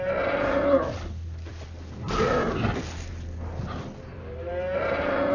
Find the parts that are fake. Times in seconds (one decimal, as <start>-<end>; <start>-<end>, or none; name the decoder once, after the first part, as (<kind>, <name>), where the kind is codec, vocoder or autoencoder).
none